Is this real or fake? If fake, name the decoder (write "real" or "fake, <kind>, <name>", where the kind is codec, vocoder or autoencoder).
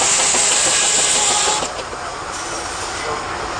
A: real